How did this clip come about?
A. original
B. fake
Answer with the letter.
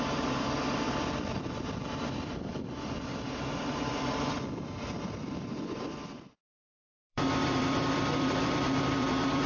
B